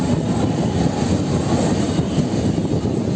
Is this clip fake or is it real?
real